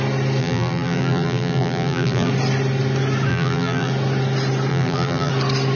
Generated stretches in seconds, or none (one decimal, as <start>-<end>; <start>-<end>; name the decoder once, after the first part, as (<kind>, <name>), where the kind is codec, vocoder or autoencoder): 0.4-2.3 (vocoder, BigVGAN v2); 3.3-3.9; 4.7-5.3